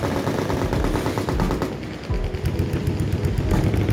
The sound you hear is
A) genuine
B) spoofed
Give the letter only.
A